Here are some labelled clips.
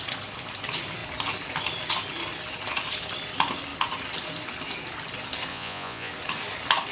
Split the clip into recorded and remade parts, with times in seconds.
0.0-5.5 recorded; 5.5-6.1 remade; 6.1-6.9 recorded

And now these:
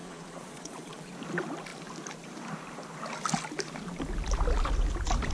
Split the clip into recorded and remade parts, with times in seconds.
0.0-1.1 remade; 1.1-5.3 recorded